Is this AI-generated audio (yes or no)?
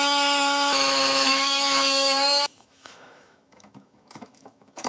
yes